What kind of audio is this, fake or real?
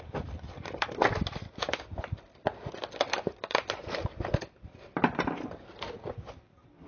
real